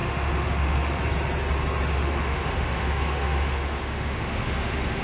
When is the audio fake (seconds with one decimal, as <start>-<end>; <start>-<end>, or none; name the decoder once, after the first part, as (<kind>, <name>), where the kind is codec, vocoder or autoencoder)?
0.0-1.0 (autoencoder, DAC-VAE); 1.9-5.0